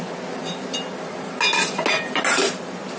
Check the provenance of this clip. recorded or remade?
recorded